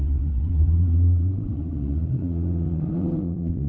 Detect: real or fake fake